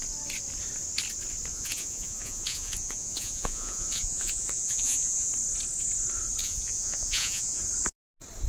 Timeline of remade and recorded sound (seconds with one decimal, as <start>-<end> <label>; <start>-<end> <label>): 0.0-1.5 recorded; 1.5-5.3 remade; 5.3-6.4 recorded; 6.4-7.6 remade; 7.6-8.5 recorded